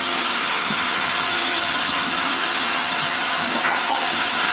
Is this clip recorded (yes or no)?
no